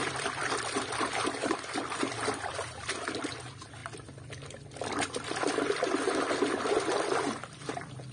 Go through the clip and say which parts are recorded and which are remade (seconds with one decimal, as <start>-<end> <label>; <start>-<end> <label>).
0.0-8.1 remade